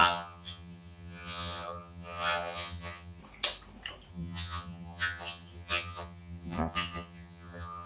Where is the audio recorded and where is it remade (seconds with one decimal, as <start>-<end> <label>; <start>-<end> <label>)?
0.0-3.2 remade; 3.2-4.1 recorded; 4.1-7.9 remade